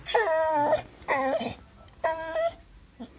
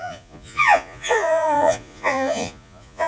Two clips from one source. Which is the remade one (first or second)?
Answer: second